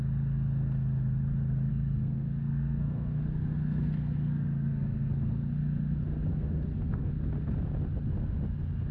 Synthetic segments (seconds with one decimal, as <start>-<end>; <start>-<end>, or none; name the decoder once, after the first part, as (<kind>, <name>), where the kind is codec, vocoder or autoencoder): 1.7-5.5 (codec, SNAC); 6.3-7.1